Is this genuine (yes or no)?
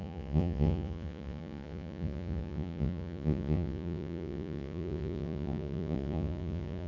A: no